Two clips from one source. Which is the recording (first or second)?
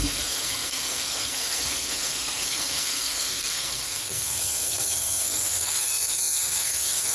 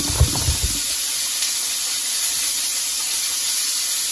second